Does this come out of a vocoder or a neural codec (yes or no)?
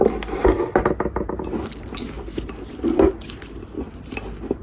no